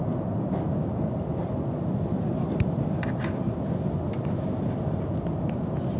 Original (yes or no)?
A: yes